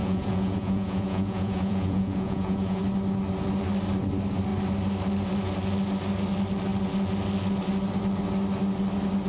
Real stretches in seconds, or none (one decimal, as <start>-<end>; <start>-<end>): 2.8-9.3